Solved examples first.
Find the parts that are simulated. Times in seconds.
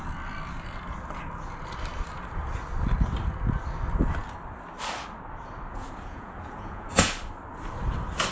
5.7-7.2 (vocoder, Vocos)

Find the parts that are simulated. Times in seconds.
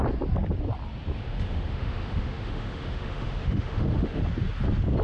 1.2-4.2 (autoencoder, DAC-VAE)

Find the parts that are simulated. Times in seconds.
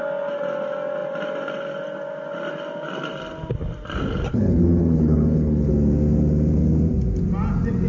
4.3-5.7 (codec, HILCodec)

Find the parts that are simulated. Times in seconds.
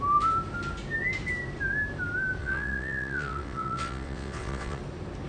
2.4-4.8 (vocoder, WaveNeXt)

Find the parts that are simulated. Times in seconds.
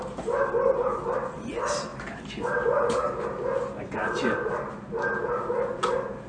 none